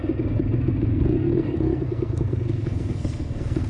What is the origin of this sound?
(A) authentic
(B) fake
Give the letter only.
B